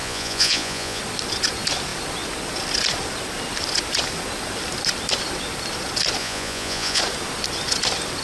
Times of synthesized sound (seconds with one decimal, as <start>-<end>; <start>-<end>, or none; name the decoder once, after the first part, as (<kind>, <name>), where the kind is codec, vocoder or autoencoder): 0.0-1.0 (vocoder, Vocos); 6.2-7.0